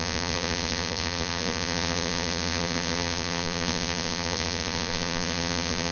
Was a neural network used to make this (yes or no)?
yes